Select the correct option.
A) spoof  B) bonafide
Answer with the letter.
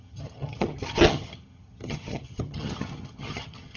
A